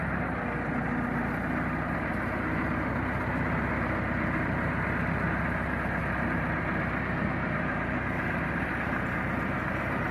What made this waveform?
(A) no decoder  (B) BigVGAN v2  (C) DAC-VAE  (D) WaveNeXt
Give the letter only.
A